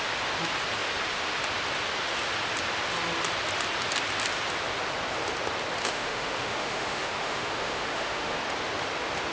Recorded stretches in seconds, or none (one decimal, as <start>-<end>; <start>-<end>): 0.0-5.8; 8.4-9.3